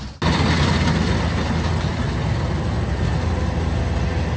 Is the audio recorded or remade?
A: recorded